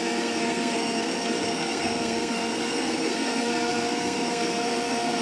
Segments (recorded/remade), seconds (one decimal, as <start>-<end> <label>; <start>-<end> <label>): 0.0-5.2 remade